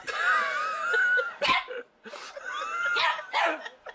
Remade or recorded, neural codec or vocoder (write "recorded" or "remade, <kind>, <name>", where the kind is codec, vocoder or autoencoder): recorded